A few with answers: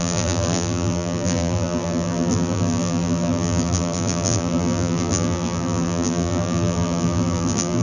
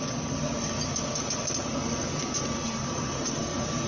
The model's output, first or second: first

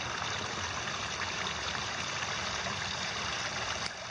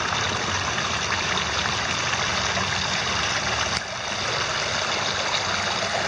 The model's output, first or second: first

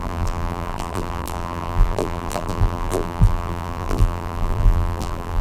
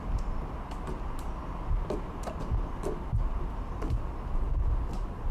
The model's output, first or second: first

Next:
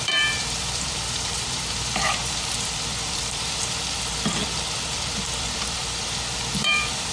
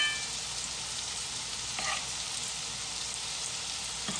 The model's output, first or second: first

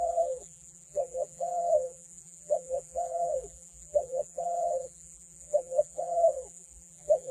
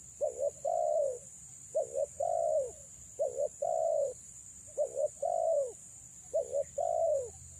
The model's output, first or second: first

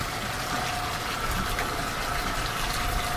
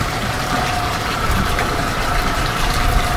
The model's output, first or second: second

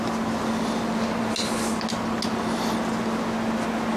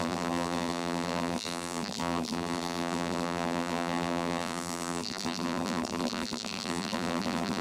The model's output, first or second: second